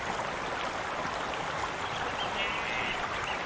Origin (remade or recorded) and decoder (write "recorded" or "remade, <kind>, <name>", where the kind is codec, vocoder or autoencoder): recorded